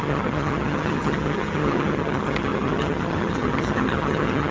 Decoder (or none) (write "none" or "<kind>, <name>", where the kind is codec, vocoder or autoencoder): vocoder, HiFi-GAN